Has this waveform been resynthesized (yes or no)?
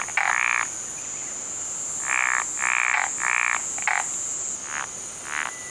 no